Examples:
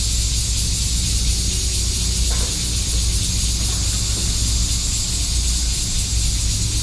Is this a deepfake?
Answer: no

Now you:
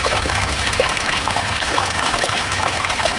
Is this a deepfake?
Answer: yes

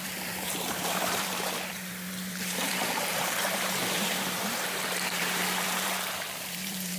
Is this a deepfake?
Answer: yes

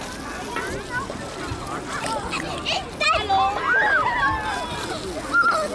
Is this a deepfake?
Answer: no